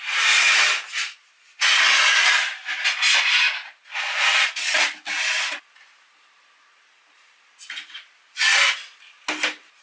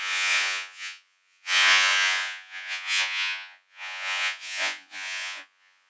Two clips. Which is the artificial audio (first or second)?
second